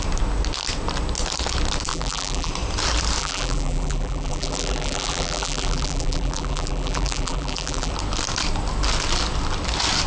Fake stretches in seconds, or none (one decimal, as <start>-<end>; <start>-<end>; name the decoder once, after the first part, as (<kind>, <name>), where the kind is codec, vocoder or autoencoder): 1.9-2.5 (vocoder, BigVGAN v2); 3.2-7.9